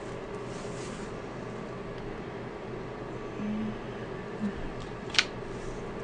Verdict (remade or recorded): recorded